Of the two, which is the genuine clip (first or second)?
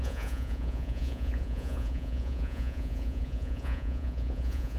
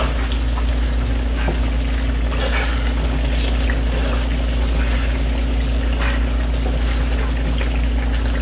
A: second